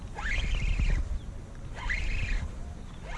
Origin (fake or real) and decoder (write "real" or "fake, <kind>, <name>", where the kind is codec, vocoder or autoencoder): real